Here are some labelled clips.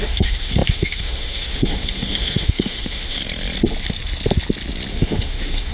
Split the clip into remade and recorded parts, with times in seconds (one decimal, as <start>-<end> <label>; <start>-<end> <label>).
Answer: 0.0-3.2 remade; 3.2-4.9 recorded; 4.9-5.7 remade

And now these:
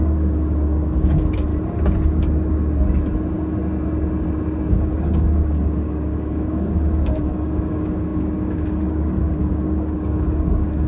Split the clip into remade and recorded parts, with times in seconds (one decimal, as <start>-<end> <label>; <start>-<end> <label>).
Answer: 0.0-1.5 remade; 1.5-4.7 recorded; 4.7-10.9 remade

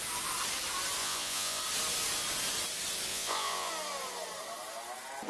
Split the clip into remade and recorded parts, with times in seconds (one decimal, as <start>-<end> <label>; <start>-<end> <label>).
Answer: 0.0-1.0 recorded; 1.0-1.6 remade; 1.6-3.1 recorded; 3.1-3.7 remade; 3.7-5.3 recorded

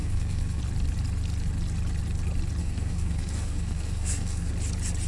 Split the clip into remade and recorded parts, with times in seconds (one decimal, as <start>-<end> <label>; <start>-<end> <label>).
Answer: 0.0-0.6 remade; 0.6-2.6 recorded; 2.6-4.5 remade; 4.5-5.1 recorded

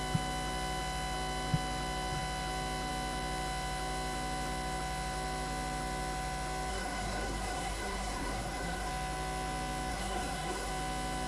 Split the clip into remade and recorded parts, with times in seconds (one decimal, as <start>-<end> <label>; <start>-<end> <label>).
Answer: 0.0-6.7 recorded; 6.7-8.9 remade; 8.9-9.9 recorded; 9.9-10.7 remade; 10.7-11.3 recorded